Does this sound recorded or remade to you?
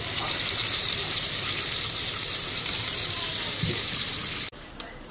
remade